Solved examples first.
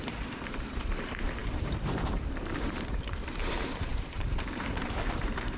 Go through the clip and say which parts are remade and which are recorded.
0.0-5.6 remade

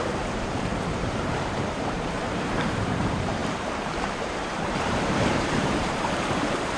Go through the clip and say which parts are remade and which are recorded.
0.0-6.8 remade

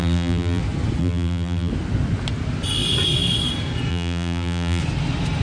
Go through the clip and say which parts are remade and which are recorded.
0.0-0.6 remade; 0.6-1.0 recorded; 1.0-1.7 remade; 1.7-3.9 recorded; 3.9-4.8 remade; 4.8-5.4 recorded

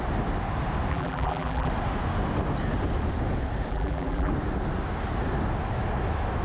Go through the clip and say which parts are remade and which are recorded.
0.0-0.9 recorded; 0.9-1.7 remade; 1.7-3.7 recorded; 3.7-4.3 remade; 4.3-6.4 recorded

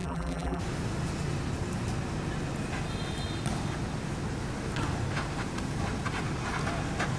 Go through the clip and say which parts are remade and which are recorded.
0.0-0.6 remade; 0.6-7.2 recorded

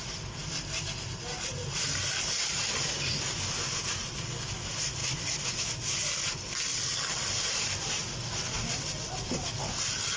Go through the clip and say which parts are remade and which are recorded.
0.0-5.0 remade; 5.0-5.6 recorded; 5.6-6.7 remade; 6.7-7.4 recorded; 7.4-8.0 remade; 8.0-10.2 recorded